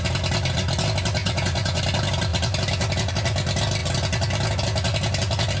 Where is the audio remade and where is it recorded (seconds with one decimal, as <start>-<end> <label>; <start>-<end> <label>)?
0.0-1.2 recorded; 1.2-1.8 remade; 1.8-5.6 recorded